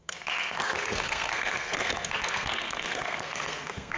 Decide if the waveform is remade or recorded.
remade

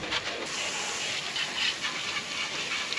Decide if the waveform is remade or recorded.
recorded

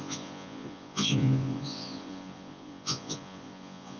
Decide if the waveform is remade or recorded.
remade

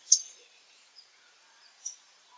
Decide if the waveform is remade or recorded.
remade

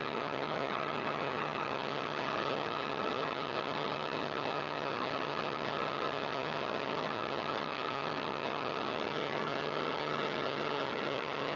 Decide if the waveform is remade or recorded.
remade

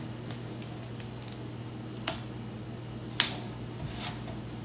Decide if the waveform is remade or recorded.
recorded